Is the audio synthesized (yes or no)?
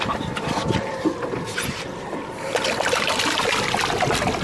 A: no